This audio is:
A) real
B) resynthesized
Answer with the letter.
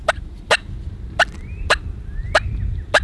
A